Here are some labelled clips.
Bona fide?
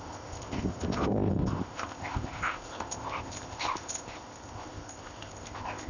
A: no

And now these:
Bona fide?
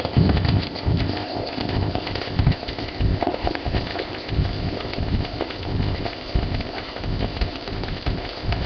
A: no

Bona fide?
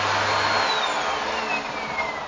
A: yes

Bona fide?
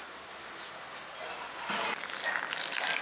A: yes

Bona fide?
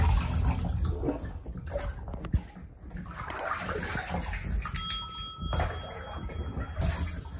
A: yes